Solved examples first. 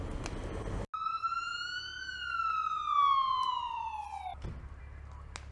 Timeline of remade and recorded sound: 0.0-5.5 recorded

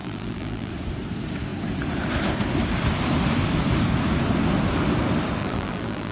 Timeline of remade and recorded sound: 0.0-0.7 remade; 0.7-5.4 recorded; 5.4-6.1 remade